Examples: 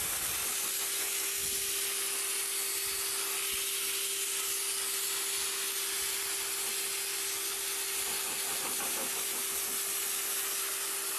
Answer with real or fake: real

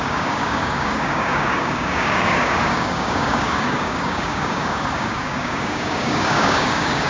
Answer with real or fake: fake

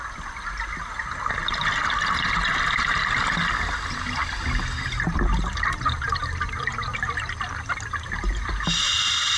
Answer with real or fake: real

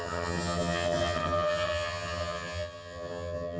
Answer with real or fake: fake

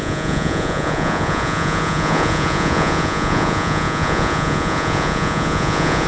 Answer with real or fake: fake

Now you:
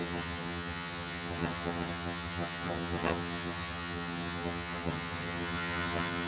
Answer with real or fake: fake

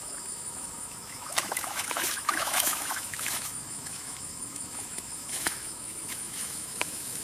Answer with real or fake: fake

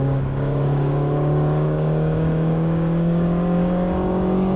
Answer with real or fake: fake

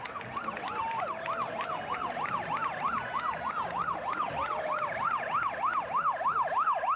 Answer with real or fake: real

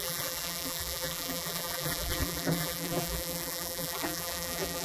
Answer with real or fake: fake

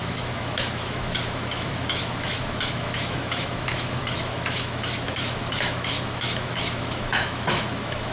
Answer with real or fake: fake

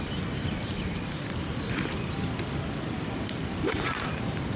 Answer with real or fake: fake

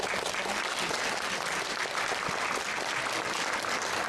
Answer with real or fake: real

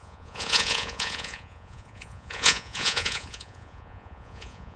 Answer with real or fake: fake